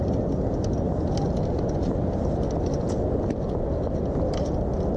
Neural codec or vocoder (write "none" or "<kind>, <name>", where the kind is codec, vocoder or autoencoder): none